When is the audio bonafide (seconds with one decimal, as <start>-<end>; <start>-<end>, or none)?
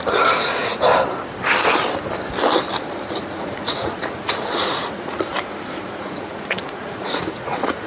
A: 0.9-3.1; 5.3-5.9